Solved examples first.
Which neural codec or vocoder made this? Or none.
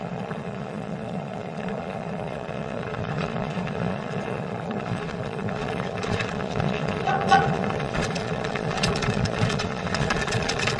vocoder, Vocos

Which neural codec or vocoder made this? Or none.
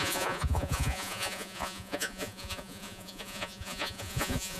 vocoder, Vocos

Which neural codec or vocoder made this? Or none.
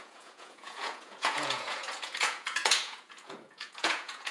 vocoder, Vocos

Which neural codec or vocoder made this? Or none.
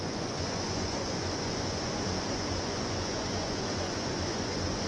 vocoder, Vocos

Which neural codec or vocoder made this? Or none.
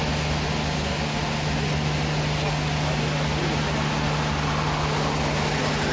none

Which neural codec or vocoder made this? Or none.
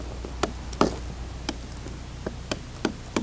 none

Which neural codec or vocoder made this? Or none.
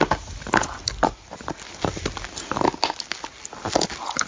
none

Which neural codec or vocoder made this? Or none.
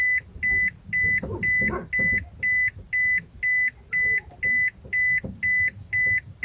none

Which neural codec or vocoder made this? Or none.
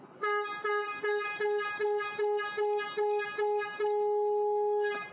none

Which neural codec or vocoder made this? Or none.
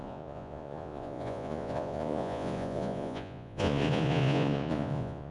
vocoder, Vocos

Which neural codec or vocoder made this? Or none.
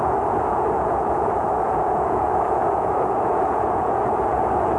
vocoder, Vocos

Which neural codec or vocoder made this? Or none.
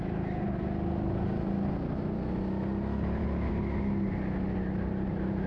none